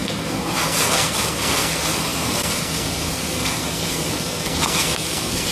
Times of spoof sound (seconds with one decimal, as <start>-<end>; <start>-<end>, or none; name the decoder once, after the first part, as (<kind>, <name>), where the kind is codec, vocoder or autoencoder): 0.0-5.5 (codec, SNAC)

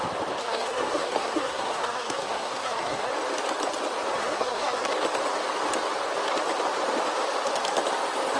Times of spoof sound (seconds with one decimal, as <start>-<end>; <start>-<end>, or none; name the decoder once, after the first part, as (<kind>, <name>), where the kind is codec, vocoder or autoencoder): 0.4-3.1 (codec, SNAC); 4.2-4.9